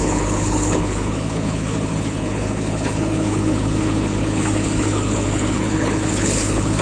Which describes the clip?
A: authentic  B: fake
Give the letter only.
B